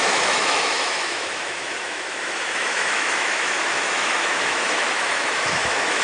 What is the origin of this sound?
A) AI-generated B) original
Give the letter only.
A